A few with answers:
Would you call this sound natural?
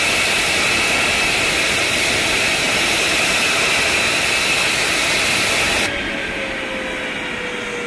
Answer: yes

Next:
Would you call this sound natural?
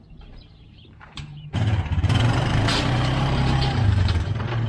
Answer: no